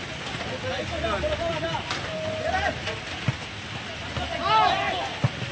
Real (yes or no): yes